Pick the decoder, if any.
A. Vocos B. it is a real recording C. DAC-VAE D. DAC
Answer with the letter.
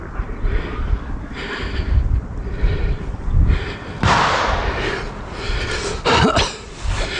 B